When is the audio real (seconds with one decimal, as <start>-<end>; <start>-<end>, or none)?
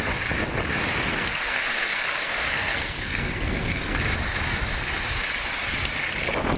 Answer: 0.0-1.1; 4.0-6.6